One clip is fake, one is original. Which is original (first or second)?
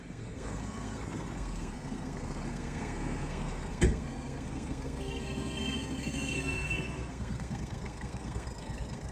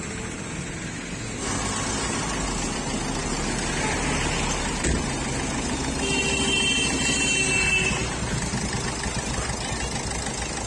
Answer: second